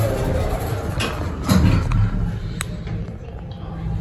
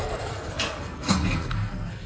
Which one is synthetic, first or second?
second